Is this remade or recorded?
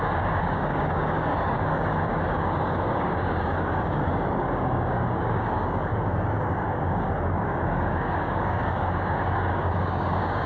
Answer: remade